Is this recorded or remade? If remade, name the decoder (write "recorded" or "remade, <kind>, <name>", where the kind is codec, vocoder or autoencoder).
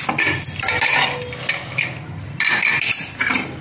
recorded